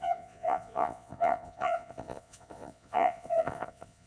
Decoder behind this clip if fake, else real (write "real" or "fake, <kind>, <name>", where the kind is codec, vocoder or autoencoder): fake, vocoder, Vocos